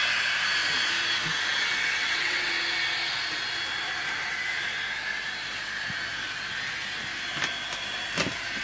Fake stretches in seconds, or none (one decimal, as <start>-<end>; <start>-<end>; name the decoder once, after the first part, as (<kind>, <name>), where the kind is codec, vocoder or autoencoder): 2.0-2.5 (vocoder, WaveNeXt)